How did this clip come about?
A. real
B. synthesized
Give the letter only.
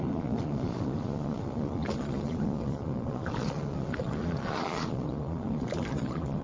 B